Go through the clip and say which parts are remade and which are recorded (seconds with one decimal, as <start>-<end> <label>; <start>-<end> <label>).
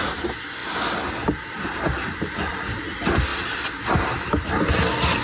0.0-5.2 recorded